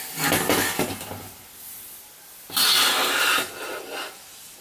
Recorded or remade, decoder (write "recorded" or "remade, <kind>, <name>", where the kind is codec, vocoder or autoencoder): recorded